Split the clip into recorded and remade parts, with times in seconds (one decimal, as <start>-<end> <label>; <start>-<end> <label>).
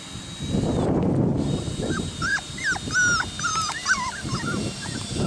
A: 0.0-1.3 recorded; 1.3-2.6 remade; 2.6-3.5 recorded; 3.5-5.3 remade